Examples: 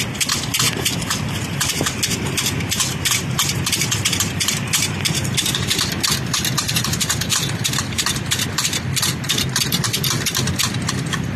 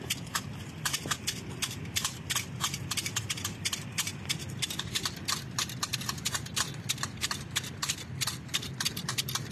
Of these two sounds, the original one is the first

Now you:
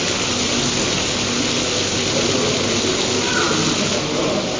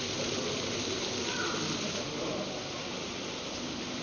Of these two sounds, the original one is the first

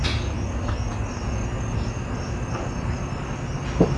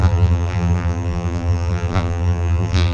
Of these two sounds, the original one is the first